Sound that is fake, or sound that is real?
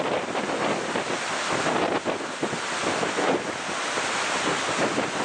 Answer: real